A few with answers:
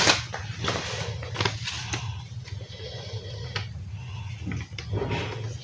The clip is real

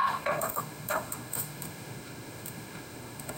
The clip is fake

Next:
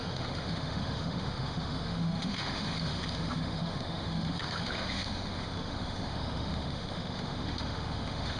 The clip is fake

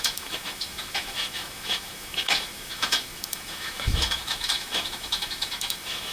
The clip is fake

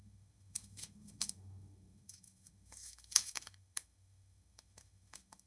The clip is fake